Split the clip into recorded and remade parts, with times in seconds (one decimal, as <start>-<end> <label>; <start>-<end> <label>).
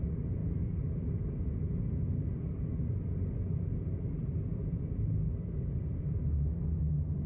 0.0-7.3 recorded